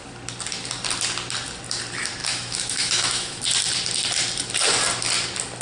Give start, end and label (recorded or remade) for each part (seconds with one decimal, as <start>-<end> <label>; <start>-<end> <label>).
0.0-2.2 recorded; 2.2-3.4 remade; 3.4-5.6 recorded